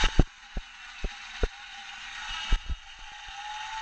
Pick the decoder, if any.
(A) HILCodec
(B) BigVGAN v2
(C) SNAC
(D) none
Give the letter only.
D